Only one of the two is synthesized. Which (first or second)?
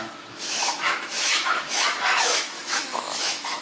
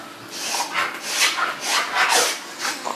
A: first